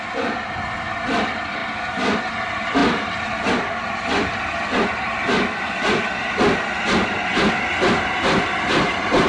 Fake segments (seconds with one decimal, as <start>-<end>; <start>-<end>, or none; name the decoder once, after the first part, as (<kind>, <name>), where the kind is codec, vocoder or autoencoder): none